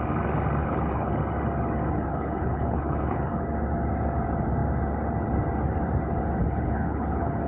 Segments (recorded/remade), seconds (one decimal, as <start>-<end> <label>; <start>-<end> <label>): 0.0-0.6 recorded; 0.6-1.1 remade; 1.1-2.1 recorded; 2.1-3.4 remade; 3.4-6.4 recorded; 6.4-7.5 remade